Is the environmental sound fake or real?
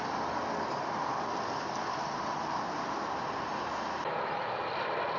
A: real